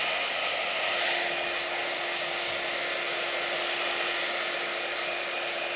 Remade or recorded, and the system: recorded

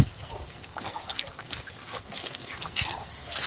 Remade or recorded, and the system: remade, codec, SNAC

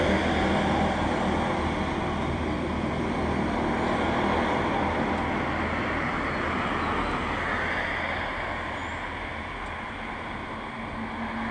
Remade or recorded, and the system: recorded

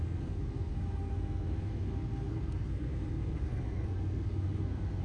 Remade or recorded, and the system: remade, codec, SNAC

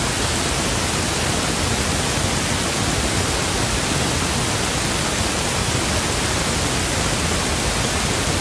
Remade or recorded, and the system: recorded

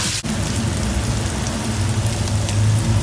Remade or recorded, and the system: recorded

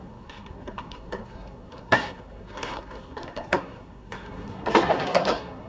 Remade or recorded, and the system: remade, codec, SNAC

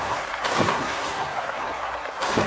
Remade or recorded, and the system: remade, codec, SNAC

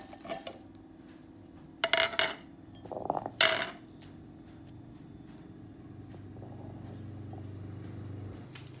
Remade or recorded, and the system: recorded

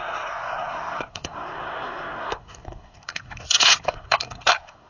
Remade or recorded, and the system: remade, codec, SNAC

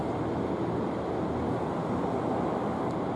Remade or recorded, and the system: recorded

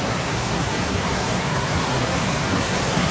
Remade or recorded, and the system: remade, codec, SNAC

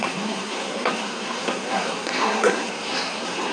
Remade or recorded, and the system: remade, codec, SNAC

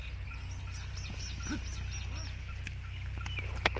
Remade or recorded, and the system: recorded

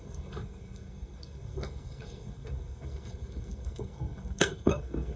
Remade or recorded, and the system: remade, codec, SNAC